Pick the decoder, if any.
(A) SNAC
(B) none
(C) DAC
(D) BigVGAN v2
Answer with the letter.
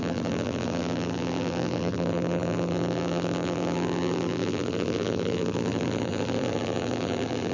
D